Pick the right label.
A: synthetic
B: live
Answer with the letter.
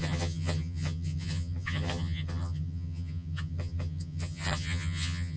A